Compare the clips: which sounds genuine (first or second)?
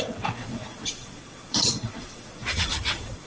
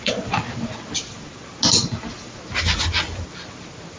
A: second